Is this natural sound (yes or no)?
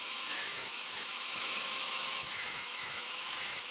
no